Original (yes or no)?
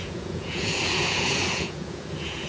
no